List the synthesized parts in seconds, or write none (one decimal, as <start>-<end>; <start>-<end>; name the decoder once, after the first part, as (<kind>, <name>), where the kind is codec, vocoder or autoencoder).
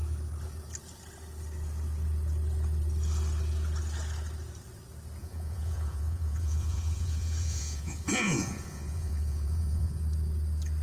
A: 5.2-10.0 (vocoder, Vocos)